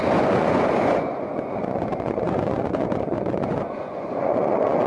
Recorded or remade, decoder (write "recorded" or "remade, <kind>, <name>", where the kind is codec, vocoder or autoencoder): remade, vocoder, Vocos